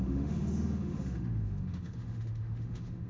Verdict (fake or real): fake